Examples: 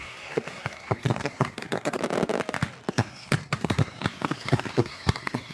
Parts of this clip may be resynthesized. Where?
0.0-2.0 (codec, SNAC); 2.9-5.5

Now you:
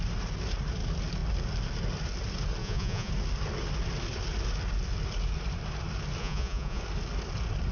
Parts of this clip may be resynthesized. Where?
2.6-3.1 (vocoder, Vocos); 6.2-6.8